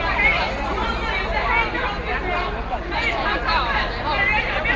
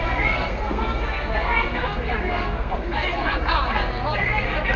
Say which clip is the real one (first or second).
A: first